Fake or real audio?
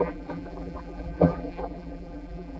fake